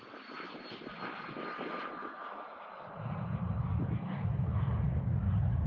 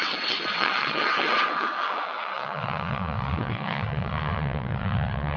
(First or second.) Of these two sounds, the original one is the first